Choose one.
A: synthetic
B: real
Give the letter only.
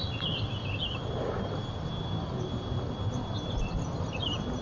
B